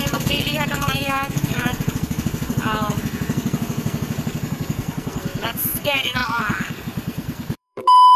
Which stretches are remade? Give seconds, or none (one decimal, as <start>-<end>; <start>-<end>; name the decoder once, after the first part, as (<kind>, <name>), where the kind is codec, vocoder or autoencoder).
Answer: 0.0-8.2 (codec, SNAC)